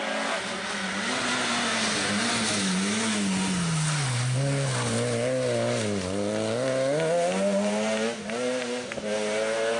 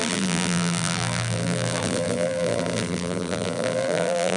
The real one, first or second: first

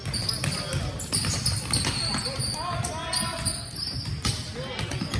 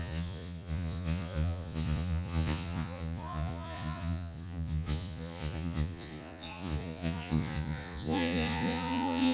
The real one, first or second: first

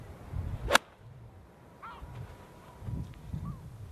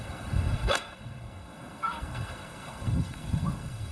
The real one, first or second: first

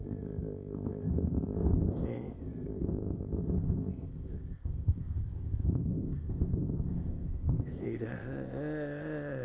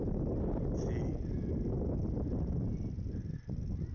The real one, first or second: second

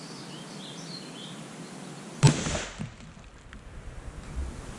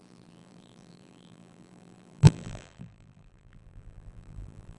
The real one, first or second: first